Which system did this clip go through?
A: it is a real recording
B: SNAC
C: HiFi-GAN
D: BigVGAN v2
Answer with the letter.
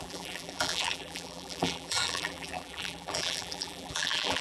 D